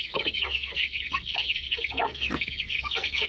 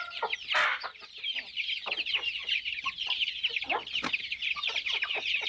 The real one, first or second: second